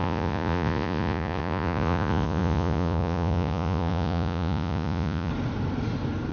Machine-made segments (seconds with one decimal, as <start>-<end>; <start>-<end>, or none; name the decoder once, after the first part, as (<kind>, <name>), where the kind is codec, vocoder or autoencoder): 0.0-5.3 (vocoder, Vocos)